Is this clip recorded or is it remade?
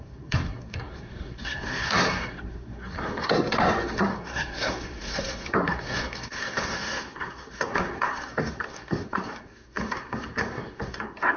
remade